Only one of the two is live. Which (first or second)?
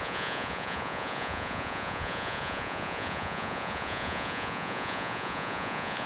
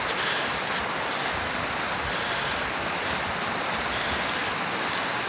second